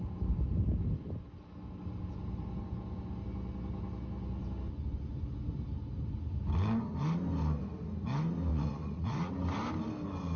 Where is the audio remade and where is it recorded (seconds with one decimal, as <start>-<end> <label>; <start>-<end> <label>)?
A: 0.0-8.5 recorded; 8.5-9.3 remade; 9.3-10.4 recorded